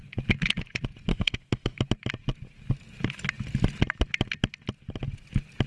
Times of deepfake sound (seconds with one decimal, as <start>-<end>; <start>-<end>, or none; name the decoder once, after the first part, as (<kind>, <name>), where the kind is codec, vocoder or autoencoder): 1.1-1.8 (autoencoder, DAC-VAE)